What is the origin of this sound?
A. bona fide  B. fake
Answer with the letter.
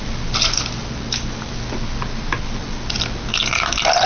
A